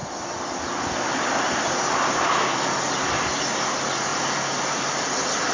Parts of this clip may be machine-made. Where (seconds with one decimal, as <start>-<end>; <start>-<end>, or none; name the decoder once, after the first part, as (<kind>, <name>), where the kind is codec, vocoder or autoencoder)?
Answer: none